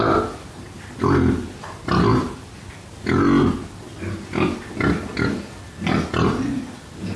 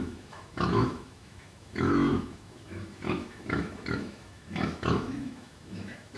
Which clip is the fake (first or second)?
second